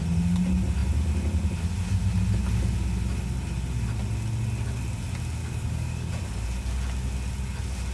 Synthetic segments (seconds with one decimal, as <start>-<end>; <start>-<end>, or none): 5.4-6.1